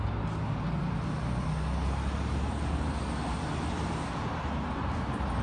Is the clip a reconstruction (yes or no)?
no